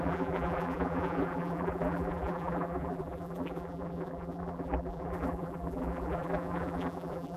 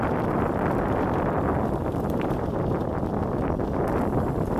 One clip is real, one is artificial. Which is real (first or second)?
second